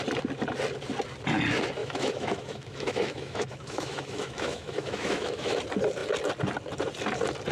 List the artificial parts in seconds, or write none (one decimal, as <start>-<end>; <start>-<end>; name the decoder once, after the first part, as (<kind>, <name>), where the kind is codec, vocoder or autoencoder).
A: 1.8-5.6 (autoencoder, DAC-VAE)

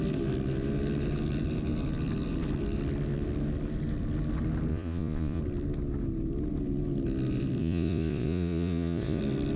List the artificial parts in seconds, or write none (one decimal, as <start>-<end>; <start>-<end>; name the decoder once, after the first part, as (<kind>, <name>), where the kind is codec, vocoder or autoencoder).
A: 4.7-5.4 (vocoder, Vocos); 7.6-9.2